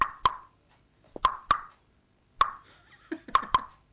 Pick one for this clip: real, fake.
real